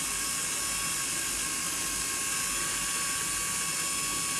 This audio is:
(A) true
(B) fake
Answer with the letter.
A